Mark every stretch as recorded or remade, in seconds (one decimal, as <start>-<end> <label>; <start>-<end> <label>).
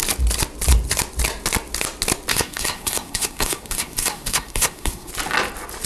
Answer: 0.0-2.3 recorded; 2.3-5.1 remade; 5.1-5.9 recorded